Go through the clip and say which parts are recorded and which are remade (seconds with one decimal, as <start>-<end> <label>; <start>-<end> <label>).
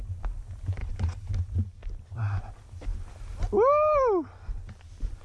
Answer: 0.0-0.8 recorded; 0.8-1.3 remade; 1.3-5.2 recorded